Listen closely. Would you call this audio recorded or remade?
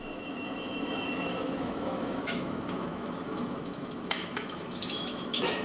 remade